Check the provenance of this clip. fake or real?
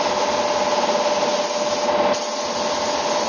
real